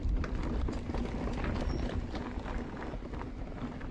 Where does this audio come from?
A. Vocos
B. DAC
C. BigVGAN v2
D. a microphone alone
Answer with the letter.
D